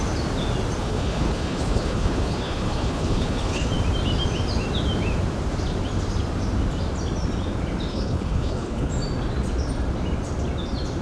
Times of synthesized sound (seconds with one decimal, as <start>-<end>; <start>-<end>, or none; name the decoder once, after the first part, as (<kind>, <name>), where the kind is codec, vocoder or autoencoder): 0.8-3.7 (codec, HILCodec); 7.9-8.9